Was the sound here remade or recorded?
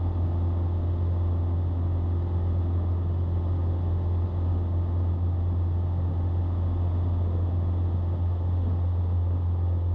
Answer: recorded